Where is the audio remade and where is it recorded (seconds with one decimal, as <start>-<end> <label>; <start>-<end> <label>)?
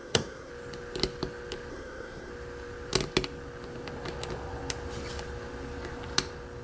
0.0-0.5 remade; 0.5-1.7 recorded; 1.7-2.3 remade; 2.3-6.6 recorded